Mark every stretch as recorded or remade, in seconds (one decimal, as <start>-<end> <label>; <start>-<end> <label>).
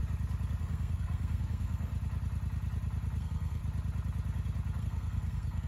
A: 0.0-0.6 recorded; 0.6-1.9 remade; 1.9-3.2 recorded; 3.2-3.6 remade; 3.6-4.8 recorded; 4.8-5.7 remade